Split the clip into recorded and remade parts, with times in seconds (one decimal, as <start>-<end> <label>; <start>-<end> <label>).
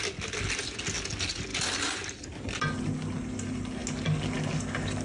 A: 0.0-5.0 recorded